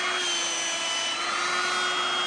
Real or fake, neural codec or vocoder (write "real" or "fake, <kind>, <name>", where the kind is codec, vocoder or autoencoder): real